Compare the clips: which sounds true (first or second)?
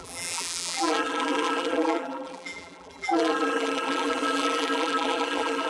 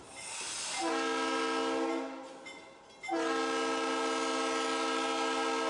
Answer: second